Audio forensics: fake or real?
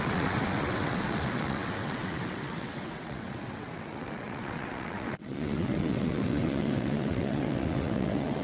fake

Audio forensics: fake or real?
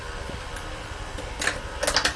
real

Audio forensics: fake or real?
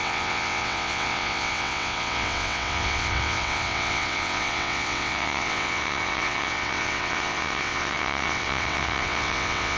fake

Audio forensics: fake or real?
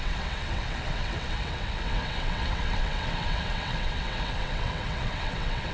fake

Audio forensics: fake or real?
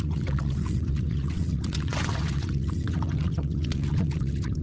fake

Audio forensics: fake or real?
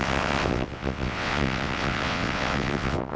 fake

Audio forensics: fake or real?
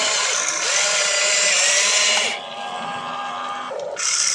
real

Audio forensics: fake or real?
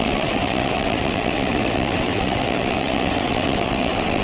fake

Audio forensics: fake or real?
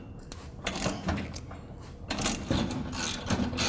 real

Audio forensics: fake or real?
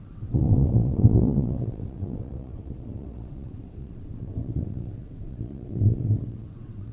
fake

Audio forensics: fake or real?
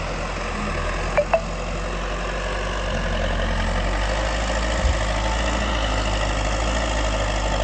real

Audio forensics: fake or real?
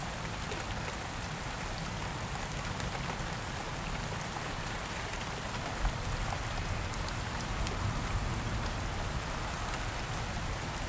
real